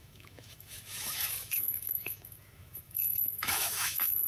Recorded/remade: remade